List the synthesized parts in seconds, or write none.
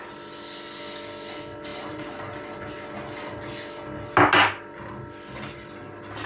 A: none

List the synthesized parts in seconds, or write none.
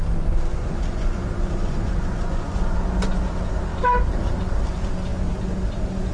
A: 0.5-2.6 (vocoder, Vocos)